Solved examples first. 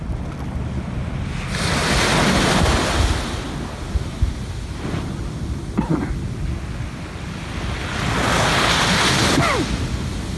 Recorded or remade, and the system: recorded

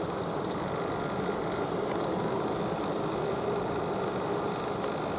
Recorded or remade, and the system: recorded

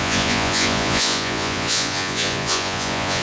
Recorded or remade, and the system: remade, vocoder, Vocos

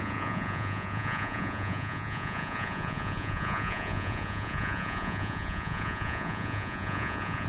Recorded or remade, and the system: remade, vocoder, Vocos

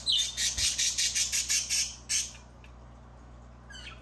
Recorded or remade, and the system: recorded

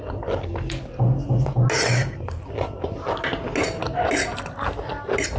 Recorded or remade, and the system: recorded